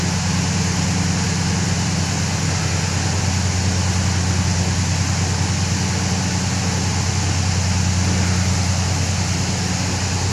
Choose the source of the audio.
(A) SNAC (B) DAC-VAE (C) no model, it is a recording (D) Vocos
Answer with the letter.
C